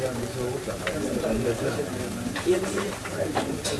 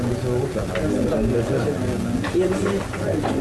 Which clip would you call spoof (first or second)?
first